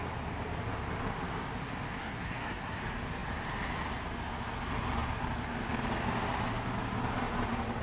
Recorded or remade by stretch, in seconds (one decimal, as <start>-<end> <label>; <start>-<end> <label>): 0.0-2.0 recorded; 2.0-2.8 remade; 2.8-7.8 recorded